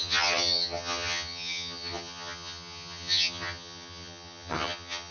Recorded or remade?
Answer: remade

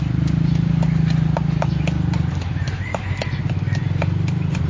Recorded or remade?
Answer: recorded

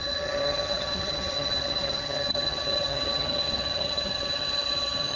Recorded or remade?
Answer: remade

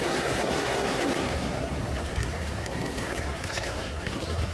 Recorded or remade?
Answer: remade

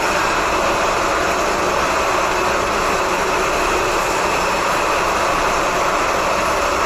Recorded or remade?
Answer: recorded